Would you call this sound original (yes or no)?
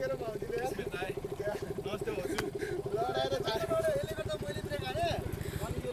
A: no